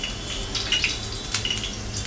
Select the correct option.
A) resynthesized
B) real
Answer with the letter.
B